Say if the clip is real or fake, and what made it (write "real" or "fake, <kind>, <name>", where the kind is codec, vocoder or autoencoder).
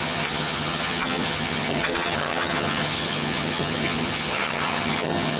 fake, vocoder, HiFi-GAN